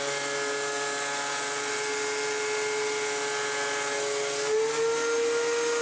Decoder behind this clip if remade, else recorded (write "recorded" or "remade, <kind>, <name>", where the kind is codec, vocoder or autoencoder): recorded